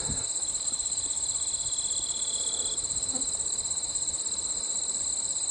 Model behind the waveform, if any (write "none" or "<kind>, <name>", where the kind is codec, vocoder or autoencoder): vocoder, BigVGAN v2